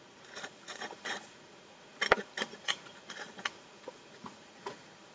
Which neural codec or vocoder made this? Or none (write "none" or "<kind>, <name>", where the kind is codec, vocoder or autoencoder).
vocoder, Vocos